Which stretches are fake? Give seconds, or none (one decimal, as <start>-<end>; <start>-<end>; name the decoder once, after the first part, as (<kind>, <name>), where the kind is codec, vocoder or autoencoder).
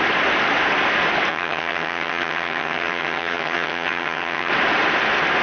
1.3-4.5 (vocoder, HiFi-GAN)